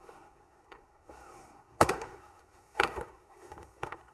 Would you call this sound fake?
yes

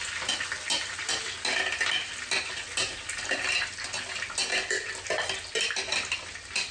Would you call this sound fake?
no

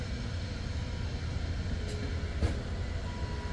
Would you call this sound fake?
no